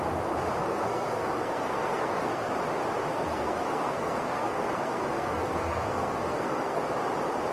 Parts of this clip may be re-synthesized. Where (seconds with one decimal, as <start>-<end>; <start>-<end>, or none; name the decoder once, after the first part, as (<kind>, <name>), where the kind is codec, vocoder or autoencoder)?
0.6-2.5 (codec, SNAC); 3.1-6.8